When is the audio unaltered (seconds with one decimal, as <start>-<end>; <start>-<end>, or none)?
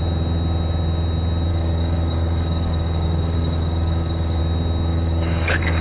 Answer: 0.0-1.5; 4.4-4.9